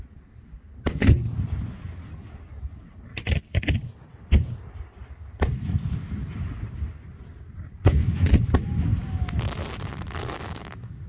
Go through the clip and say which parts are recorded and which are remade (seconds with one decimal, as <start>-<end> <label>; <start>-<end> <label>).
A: 0.0-11.1 recorded